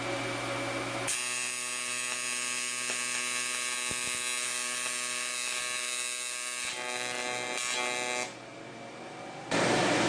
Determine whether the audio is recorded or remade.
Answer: recorded